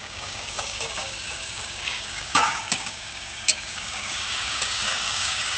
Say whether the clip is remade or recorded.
remade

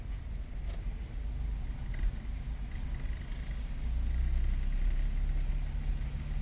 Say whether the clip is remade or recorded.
recorded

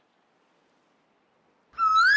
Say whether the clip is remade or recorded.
recorded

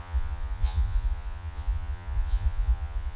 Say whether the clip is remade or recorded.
remade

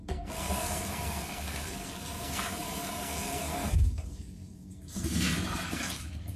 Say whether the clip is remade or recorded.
remade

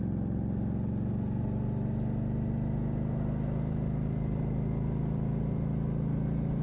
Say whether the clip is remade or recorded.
recorded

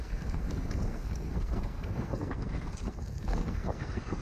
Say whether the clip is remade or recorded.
remade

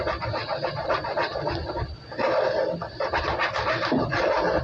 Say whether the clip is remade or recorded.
recorded